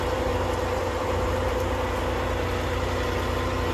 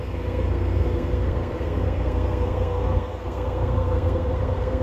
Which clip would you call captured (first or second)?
first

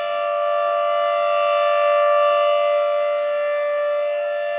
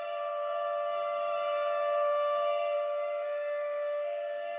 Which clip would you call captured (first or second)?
first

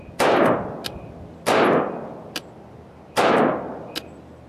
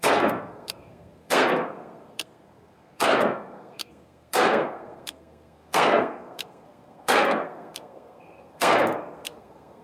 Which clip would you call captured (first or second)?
first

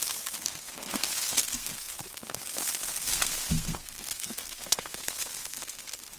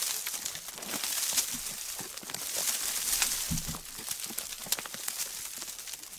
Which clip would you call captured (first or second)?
second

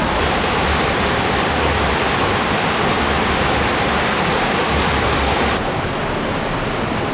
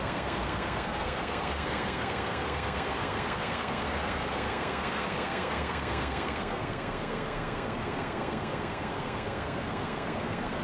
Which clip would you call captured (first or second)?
first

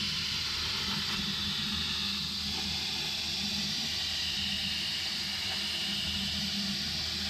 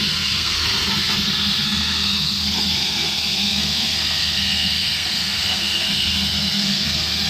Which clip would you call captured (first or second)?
first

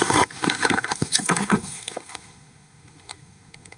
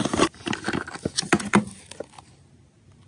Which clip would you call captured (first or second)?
second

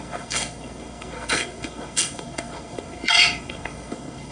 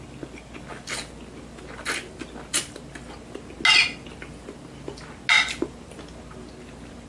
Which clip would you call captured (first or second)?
second